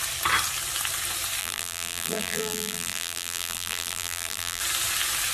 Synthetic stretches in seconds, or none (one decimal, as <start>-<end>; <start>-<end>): 1.4-4.6